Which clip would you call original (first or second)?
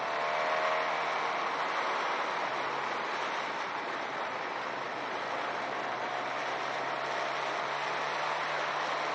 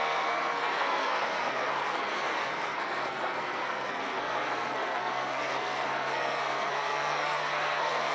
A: first